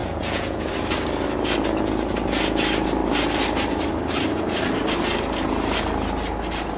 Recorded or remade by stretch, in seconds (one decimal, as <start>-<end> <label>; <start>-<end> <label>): 0.0-0.7 remade; 0.7-6.8 recorded